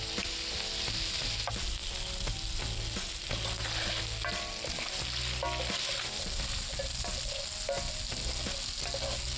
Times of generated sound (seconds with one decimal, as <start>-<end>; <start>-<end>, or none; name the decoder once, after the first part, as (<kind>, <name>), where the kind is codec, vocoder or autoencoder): none